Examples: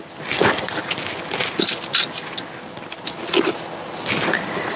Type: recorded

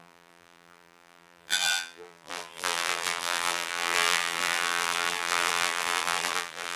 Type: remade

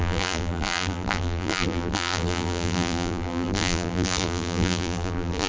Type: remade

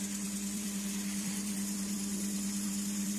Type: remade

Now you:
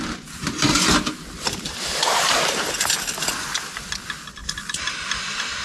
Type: recorded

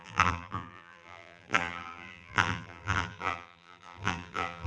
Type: remade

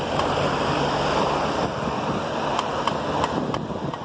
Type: remade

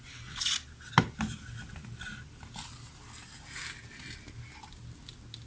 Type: recorded